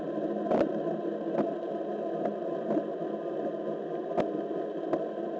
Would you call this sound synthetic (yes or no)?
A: no